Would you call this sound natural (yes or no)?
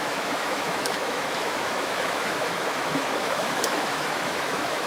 no